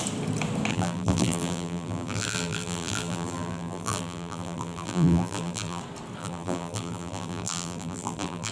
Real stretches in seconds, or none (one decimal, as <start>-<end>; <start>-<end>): 0.0-0.7; 5.8-6.2